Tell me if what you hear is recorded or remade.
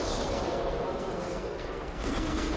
remade